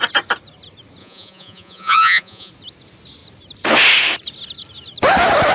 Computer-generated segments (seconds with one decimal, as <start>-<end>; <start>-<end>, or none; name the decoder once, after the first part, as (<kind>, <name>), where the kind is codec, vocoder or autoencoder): 1.0-2.5 (vocoder, Vocos)